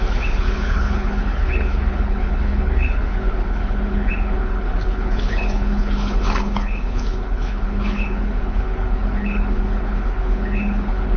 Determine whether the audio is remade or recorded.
remade